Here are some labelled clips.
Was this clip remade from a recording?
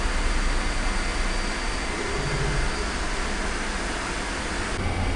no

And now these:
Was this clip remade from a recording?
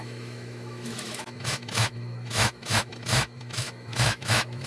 yes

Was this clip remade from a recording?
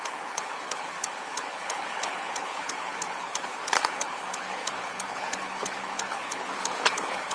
yes